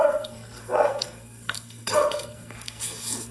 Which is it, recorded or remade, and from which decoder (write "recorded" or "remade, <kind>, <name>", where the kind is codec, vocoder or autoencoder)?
remade, codec, SNAC